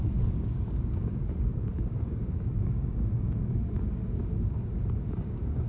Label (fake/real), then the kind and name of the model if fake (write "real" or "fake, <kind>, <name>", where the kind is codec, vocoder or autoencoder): fake, codec, DAC